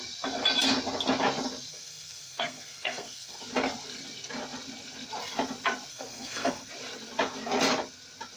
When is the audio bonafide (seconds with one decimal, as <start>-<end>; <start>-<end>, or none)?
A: 0.0-1.7; 3.4-5.9; 6.7-8.4